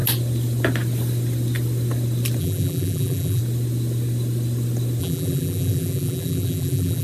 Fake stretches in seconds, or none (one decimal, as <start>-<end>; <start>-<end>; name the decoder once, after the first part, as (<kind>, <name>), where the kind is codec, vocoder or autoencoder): 2.4-3.4 (vocoder, BigVGAN v2); 5.0-7.0